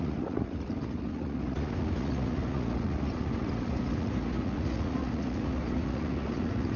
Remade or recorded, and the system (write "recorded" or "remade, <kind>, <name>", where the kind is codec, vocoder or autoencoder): remade, vocoder, Vocos